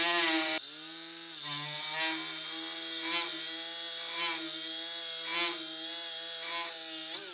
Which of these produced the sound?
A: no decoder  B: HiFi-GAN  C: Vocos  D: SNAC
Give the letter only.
A